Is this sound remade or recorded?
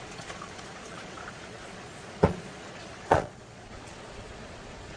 remade